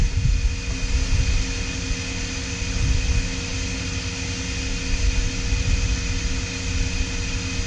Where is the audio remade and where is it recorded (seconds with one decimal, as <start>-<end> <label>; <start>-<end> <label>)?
0.0-7.7 recorded